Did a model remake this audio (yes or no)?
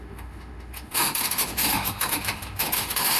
yes